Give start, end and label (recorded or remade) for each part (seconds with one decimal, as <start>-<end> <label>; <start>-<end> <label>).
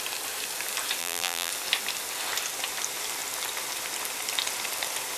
0.0-1.0 recorded; 1.0-1.5 remade; 1.5-5.2 recorded